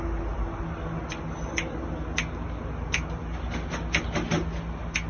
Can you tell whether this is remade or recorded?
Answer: recorded